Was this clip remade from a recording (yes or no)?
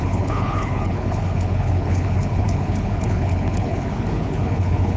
yes